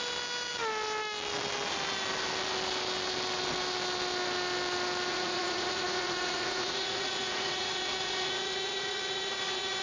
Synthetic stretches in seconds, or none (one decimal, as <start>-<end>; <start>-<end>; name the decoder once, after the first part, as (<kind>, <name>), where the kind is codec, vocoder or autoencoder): 5.1-9.8 (vocoder, Vocos)